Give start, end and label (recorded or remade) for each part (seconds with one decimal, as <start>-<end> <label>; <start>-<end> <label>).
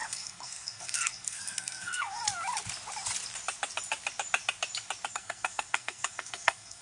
0.0-2.2 remade; 2.2-5.1 recorded; 5.1-6.8 remade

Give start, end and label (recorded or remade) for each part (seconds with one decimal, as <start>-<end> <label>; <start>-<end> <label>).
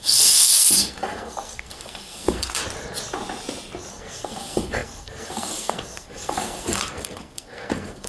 0.0-2.6 remade; 2.6-3.9 recorded; 3.9-8.1 remade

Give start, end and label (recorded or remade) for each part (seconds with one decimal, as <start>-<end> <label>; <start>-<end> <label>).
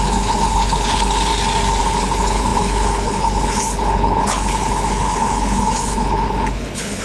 0.0-1.3 remade; 1.3-1.8 recorded; 1.8-7.0 remade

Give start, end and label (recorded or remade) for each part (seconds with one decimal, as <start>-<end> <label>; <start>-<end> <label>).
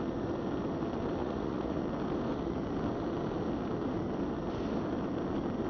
0.0-1.2 recorded; 1.2-1.8 remade; 1.8-5.7 recorded